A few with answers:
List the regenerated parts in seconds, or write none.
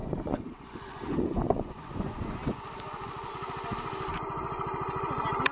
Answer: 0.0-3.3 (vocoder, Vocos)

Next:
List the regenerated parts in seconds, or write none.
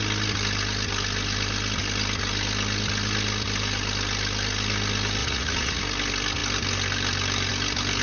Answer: 5.2-5.8 (vocoder, Vocos)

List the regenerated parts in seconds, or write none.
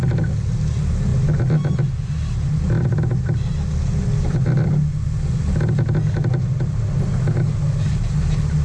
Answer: none